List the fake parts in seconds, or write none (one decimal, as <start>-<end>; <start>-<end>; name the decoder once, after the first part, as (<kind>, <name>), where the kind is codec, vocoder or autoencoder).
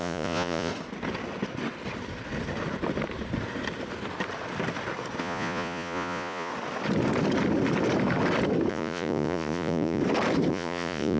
0.0-0.7 (vocoder, Vocos); 5.2-6.5; 8.7-10.0; 10.5-11.2